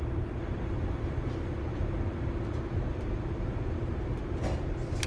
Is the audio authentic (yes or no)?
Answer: yes